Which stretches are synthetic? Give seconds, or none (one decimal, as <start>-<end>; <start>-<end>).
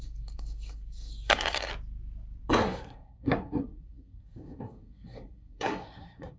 0.0-1.7; 2.5-6.4